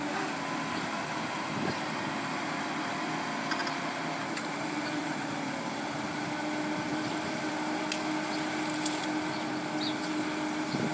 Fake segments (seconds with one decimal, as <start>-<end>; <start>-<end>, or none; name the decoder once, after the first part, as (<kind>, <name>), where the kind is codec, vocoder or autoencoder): 3.6-5.7 (vocoder, BigVGAN v2); 6.9-7.5